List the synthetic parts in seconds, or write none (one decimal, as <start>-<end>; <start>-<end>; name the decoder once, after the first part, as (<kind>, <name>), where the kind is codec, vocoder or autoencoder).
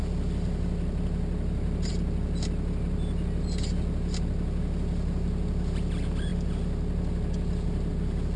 none